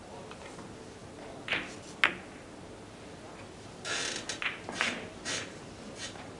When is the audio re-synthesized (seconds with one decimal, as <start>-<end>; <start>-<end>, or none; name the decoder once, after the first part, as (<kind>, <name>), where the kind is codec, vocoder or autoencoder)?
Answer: 0.0-1.0 (vocoder, BigVGAN v2); 4.8-6.4